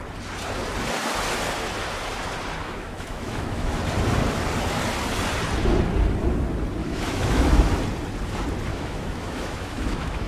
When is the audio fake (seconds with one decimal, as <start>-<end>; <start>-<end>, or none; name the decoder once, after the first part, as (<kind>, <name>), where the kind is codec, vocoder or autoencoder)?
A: 2.6-3.8 (autoencoder, DAC-VAE); 6.8-7.7; 8.7-10.3